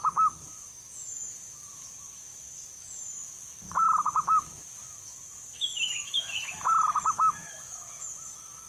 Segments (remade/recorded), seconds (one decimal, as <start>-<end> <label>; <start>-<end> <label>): 0.0-8.7 remade